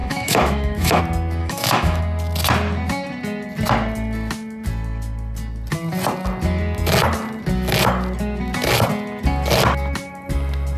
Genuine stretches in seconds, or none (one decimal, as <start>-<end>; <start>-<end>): 1.0-1.4; 2.0-10.8